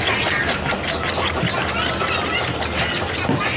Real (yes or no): yes